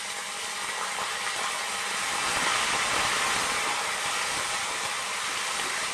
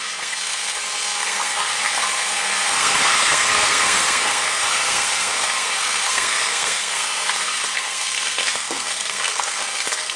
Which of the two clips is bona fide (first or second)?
first